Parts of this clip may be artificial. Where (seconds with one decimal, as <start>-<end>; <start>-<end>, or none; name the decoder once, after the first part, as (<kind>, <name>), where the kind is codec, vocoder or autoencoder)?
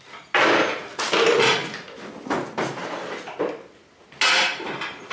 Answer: none